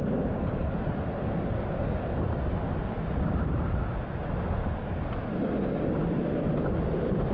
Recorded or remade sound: recorded